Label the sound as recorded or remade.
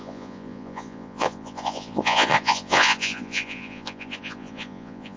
remade